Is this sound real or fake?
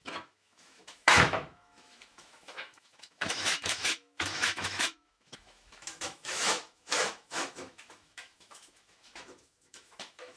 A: fake